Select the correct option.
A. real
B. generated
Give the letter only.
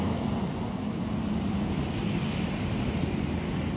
A